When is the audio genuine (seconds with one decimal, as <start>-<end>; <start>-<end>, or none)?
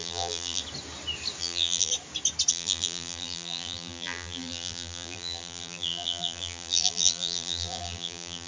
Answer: 0.6-1.4; 1.9-2.5